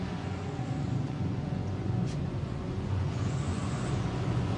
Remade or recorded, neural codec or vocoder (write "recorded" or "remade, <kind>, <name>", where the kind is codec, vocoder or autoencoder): remade, vocoder, Vocos